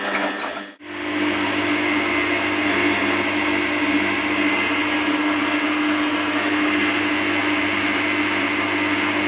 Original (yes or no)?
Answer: yes